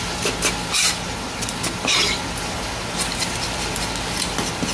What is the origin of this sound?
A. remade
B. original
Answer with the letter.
B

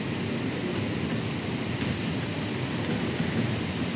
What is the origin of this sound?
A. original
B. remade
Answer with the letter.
A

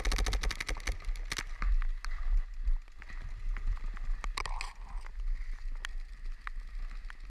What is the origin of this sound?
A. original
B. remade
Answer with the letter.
A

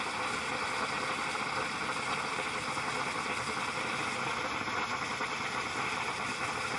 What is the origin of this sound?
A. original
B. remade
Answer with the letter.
A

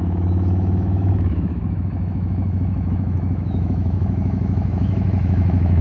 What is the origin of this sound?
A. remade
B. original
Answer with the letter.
A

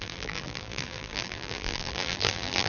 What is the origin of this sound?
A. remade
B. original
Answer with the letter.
A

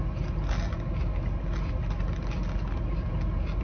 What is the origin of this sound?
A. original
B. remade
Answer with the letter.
A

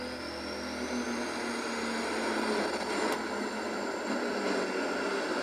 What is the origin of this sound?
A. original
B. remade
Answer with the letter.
A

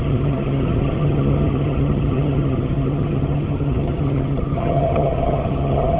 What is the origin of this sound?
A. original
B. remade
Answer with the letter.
B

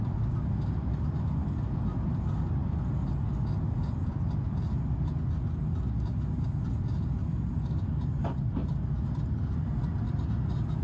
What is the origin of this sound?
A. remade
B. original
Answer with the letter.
B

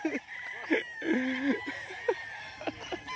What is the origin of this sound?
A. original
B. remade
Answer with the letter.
A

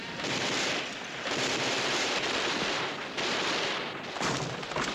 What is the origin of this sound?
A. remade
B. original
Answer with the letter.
A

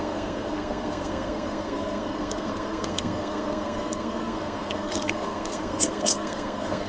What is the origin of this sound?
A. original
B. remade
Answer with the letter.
B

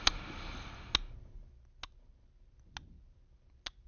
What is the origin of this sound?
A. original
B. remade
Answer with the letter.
A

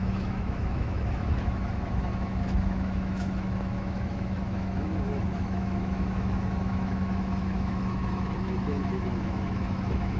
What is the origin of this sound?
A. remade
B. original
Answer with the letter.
A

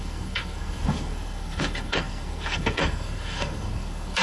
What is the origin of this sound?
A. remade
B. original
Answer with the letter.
A